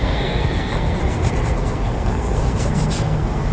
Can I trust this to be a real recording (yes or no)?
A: no